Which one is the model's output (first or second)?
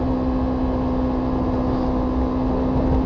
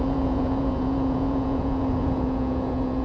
second